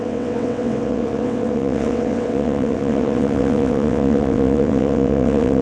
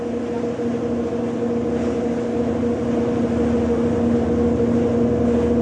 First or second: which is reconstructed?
first